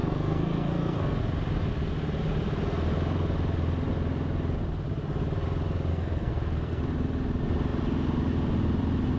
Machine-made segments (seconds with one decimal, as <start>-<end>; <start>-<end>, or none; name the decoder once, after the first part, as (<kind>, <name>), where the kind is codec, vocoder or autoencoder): 0.0-1.2 (codec, SNAC); 5.9-6.8

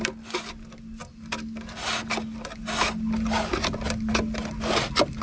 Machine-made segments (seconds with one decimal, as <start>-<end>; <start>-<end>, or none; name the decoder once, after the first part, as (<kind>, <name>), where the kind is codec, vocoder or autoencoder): none